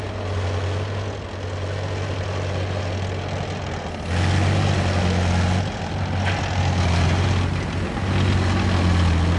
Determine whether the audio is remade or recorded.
recorded